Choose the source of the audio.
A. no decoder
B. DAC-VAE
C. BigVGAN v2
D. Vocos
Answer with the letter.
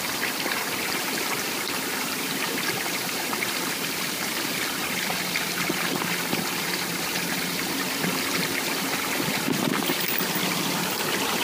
C